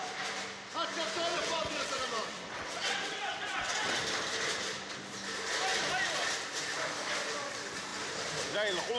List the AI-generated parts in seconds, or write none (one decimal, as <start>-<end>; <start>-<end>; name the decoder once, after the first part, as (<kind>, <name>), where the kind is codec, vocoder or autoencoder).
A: 1.3-4.0 (vocoder, WaveNeXt)